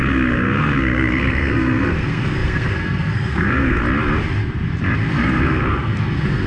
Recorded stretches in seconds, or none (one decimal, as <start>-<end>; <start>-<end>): 3.8-5.1